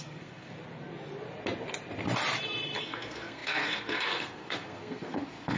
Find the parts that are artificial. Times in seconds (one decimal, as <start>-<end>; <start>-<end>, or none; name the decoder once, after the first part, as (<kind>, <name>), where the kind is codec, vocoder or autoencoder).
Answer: 0.0-0.5 (codec, SNAC); 2.8-5.6